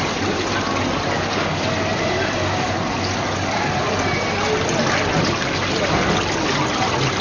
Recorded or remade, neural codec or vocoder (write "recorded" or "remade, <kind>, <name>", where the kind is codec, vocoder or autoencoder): recorded